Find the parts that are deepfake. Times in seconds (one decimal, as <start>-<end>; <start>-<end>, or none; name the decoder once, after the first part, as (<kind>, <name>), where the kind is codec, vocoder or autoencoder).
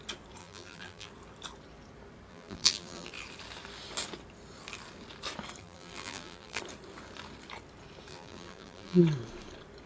0.4-1.1 (vocoder, BigVGAN v2); 2.3-3.1; 5.6-6.6; 8.1-9.0